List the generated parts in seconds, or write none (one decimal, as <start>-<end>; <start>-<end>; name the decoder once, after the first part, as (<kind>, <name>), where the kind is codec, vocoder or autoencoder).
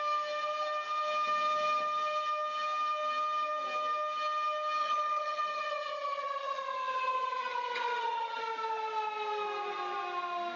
4.8-8.4 (vocoder, HiFi-GAN)